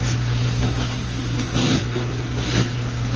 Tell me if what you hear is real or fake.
fake